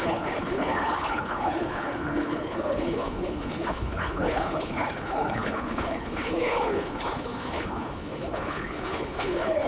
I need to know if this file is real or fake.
fake